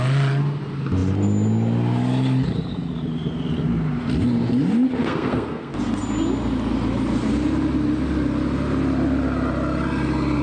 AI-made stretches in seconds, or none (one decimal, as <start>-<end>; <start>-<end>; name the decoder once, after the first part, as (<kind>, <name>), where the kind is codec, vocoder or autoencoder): 5.0-5.7 (codec, SNAC)